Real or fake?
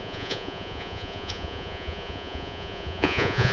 fake